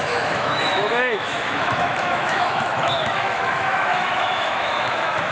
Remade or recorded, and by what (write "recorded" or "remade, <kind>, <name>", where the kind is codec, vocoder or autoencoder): remade, autoencoder, DAC-VAE